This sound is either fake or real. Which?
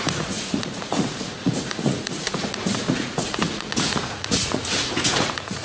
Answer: fake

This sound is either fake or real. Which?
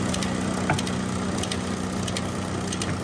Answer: real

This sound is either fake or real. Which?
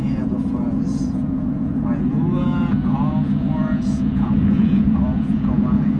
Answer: fake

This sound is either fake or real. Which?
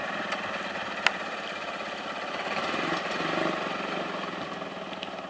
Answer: real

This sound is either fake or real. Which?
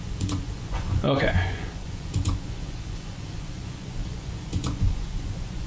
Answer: fake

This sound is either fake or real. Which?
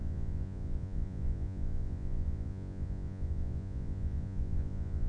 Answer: fake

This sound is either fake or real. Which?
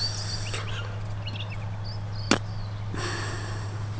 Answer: real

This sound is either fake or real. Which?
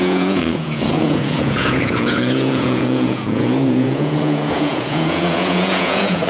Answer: fake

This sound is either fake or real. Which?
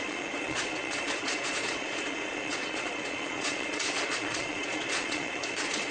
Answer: fake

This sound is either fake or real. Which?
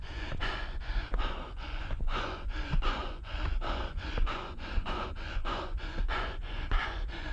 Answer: fake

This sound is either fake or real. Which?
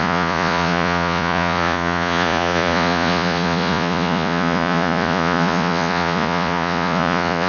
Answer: fake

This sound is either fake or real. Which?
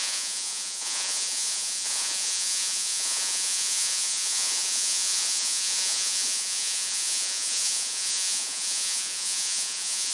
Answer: fake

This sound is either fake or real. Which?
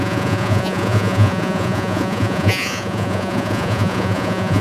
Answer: fake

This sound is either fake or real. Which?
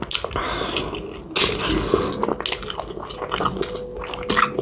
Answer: real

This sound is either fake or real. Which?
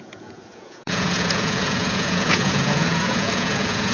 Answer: fake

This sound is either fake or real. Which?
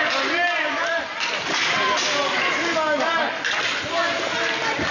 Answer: real